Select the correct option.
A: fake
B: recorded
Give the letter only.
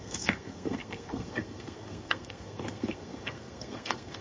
A